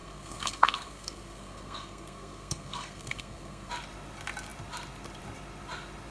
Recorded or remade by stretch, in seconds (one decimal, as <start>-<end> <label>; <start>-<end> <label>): 0.0-3.7 remade; 3.7-6.1 recorded